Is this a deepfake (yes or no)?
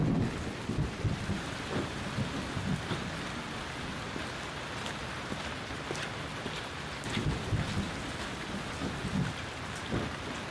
no